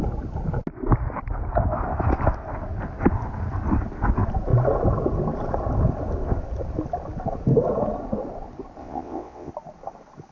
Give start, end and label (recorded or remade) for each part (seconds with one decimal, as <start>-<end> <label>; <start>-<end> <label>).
0.0-8.8 recorded; 8.8-9.5 remade; 9.5-10.3 recorded